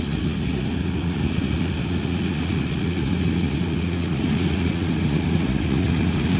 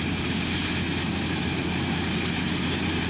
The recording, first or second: second